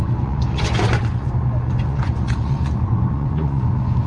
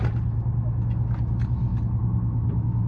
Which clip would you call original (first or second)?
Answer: second